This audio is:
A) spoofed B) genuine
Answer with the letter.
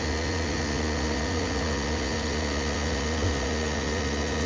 A